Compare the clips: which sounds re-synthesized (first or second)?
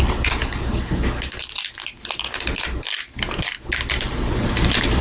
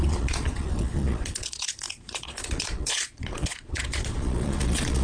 second